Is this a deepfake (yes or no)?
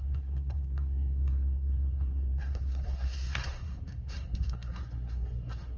yes